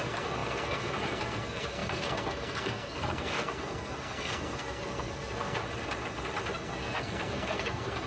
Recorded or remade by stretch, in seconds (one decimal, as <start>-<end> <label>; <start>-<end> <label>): 0.0-5.6 remade; 5.6-6.4 recorded; 6.4-8.1 remade